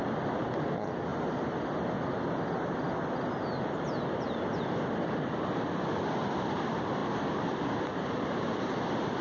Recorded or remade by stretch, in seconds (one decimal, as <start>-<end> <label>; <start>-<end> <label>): 0.0-7.0 recorded; 7.0-8.3 remade; 8.3-9.2 recorded